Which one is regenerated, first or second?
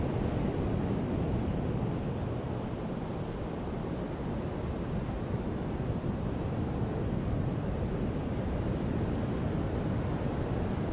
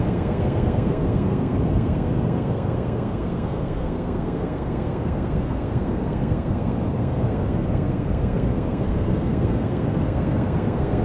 second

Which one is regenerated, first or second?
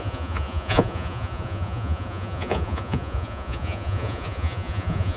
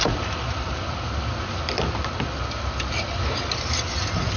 first